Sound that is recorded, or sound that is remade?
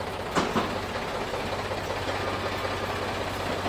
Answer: recorded